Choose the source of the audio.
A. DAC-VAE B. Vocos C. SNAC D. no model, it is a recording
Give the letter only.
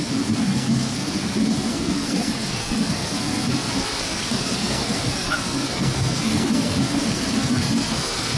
C